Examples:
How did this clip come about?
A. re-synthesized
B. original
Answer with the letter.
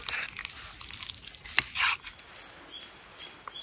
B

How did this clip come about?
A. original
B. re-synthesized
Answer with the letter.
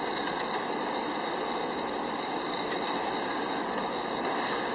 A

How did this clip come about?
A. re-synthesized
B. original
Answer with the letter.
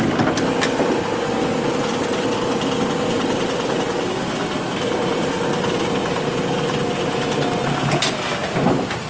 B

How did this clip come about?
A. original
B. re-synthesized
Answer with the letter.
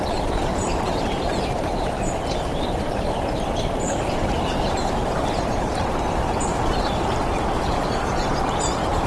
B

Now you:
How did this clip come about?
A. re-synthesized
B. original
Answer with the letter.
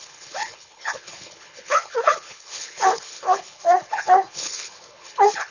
A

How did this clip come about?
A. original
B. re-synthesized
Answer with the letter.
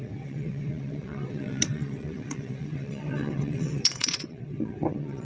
B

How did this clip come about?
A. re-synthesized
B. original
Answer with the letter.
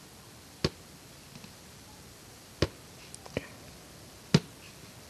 B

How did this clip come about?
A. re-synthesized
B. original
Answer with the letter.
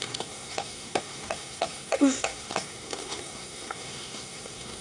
A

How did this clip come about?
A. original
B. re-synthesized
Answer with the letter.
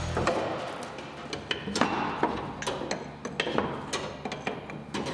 A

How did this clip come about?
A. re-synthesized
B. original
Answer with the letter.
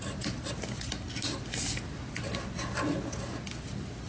B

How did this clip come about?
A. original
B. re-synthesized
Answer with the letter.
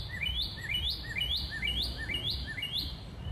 A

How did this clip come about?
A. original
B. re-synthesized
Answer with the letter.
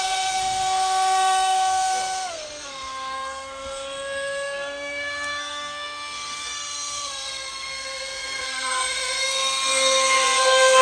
B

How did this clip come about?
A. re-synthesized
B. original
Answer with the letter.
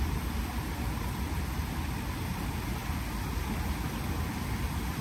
B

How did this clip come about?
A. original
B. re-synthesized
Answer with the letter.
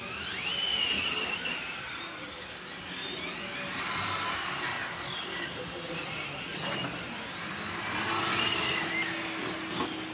A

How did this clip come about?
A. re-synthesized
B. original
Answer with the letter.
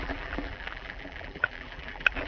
A